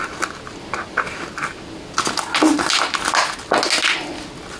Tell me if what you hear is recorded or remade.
recorded